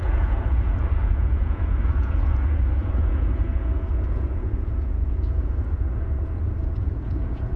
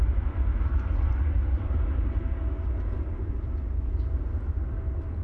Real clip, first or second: second